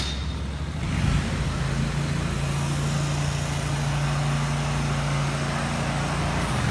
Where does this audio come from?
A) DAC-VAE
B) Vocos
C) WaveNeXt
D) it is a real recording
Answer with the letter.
D